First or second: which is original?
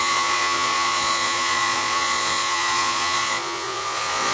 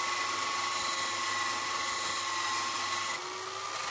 second